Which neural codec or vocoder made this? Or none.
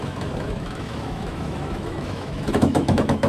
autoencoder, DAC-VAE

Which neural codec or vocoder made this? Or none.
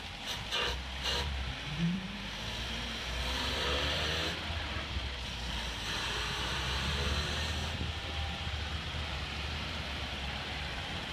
vocoder, BigVGAN v2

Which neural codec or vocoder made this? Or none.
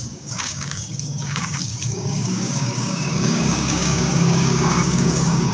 codec, DAC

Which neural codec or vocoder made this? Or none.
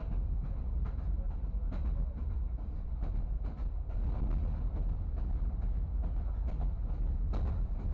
none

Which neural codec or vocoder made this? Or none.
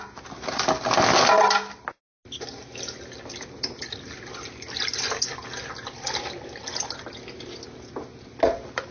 none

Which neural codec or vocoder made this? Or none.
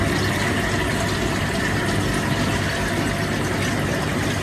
none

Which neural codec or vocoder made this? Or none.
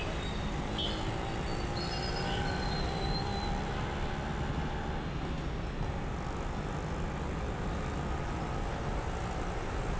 none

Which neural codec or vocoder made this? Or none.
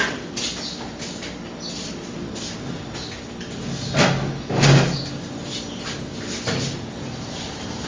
none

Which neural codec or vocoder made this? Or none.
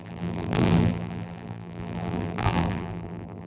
vocoder, BigVGAN v2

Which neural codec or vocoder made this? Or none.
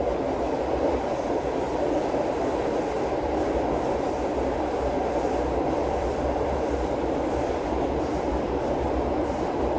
vocoder, BigVGAN v2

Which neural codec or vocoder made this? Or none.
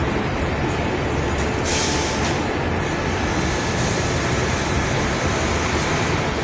none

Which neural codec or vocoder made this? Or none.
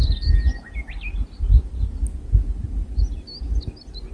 none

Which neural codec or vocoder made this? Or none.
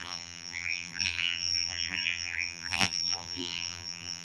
vocoder, BigVGAN v2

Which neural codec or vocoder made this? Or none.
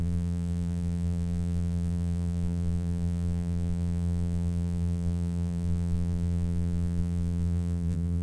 vocoder, BigVGAN v2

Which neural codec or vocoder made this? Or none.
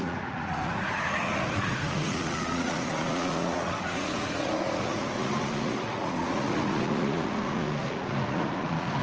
vocoder, Vocos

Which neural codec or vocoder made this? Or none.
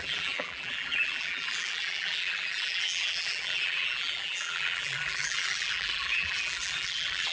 vocoder, BigVGAN v2